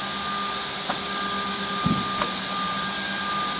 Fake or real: real